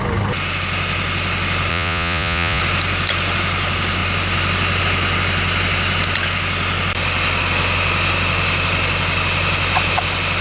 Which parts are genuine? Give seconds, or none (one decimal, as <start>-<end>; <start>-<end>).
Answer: 0.0-1.7; 2.6-10.4